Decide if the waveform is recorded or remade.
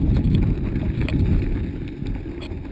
recorded